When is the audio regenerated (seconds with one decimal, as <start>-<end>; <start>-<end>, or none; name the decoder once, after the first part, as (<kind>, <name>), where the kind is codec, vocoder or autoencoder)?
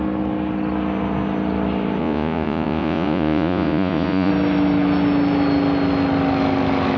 2.0-4.3 (vocoder, Vocos)